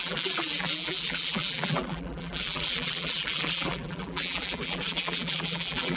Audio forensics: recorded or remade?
remade